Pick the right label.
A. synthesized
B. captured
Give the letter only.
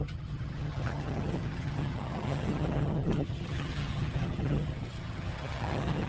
A